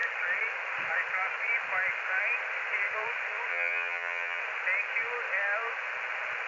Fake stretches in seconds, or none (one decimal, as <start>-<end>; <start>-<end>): 3.5-4.4